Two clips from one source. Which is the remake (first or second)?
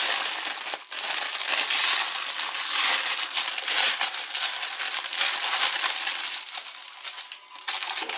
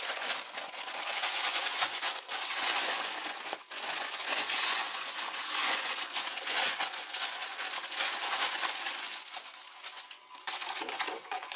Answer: second